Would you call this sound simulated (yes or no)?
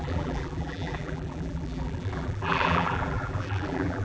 yes